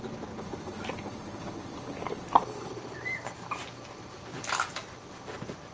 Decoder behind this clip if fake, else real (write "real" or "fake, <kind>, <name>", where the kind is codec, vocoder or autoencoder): real